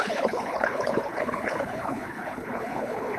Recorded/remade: remade